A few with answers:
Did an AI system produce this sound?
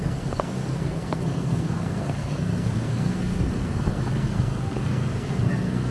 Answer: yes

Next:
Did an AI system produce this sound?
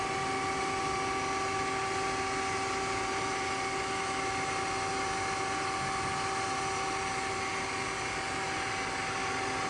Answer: no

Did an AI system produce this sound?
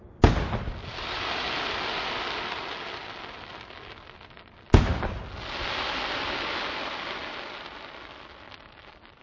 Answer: no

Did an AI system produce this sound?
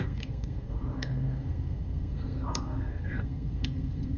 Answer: yes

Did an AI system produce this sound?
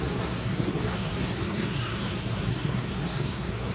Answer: yes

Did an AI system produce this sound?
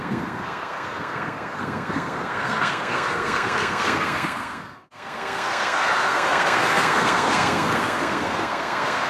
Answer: yes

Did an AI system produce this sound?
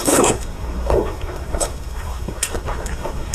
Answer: yes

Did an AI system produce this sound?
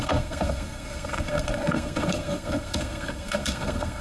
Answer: yes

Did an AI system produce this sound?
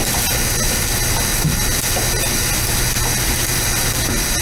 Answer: no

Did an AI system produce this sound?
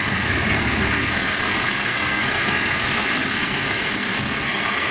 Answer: yes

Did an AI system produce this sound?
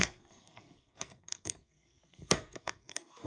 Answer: yes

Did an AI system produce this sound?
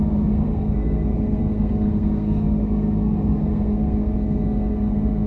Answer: yes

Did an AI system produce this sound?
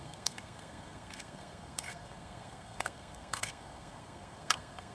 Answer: yes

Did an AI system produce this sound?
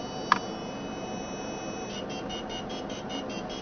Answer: no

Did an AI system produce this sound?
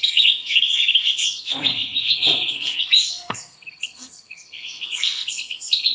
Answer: yes